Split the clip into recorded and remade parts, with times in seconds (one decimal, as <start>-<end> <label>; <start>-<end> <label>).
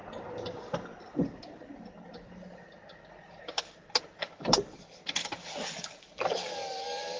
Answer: 0.0-4.2 recorded; 4.2-5.0 remade; 5.0-6.0 recorded; 6.0-7.2 remade